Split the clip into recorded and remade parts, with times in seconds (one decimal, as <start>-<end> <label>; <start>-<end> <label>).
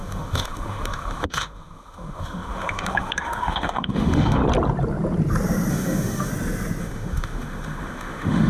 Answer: 0.0-4.4 remade; 4.4-5.7 recorded; 5.7-6.3 remade; 6.3-6.8 recorded; 6.8-8.5 remade